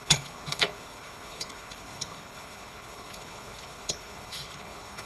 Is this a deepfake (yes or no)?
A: yes